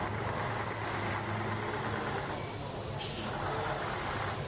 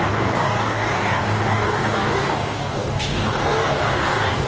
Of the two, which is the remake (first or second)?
second